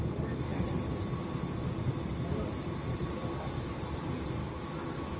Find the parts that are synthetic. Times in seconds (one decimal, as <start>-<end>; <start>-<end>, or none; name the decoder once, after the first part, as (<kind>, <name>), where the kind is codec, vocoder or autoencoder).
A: 4.4-5.2 (autoencoder, DAC-VAE)